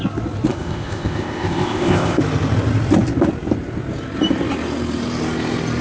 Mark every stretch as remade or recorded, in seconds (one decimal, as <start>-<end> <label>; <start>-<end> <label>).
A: 0.0-0.5 recorded; 0.5-2.2 remade; 2.2-5.8 recorded